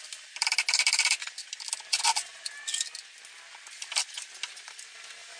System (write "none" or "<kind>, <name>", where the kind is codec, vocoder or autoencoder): none